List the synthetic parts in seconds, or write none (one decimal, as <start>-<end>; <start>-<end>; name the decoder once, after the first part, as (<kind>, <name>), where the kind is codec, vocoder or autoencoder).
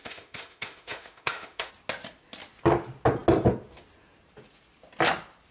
0.0-1.7 (autoencoder, DAC-VAE)